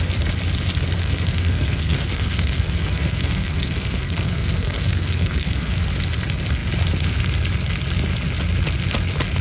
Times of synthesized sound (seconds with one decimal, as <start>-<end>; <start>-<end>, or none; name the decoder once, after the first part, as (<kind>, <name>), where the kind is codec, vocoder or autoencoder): 1.0-5.8 (codec, SNAC)